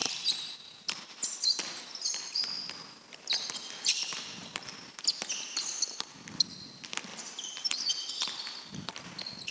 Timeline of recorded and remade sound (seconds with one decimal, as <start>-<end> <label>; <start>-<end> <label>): 0.0-0.5 remade; 0.5-1.2 recorded; 1.2-1.8 remade; 1.8-7.1 recorded; 7.1-8.1 remade; 8.1-9.5 recorded